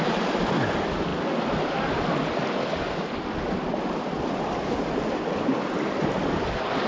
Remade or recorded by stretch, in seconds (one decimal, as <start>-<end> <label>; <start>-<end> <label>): 0.0-6.9 recorded